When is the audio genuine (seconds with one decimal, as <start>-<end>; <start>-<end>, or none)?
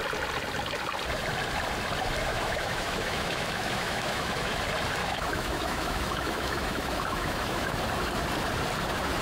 0.0-2.3; 4.6-5.0; 7.8-9.2